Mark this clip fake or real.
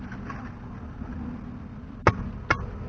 real